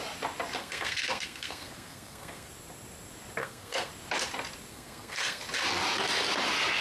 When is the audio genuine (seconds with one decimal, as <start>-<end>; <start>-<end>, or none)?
0.0-0.6; 2.5-3.4; 3.9-4.7; 5.4-6.8